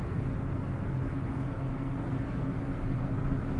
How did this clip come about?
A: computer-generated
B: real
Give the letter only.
A